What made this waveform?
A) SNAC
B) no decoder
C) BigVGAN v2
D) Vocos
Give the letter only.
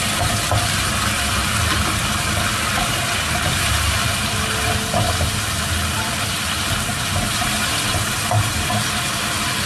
B